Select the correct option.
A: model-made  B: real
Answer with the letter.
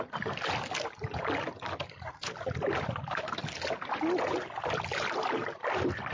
B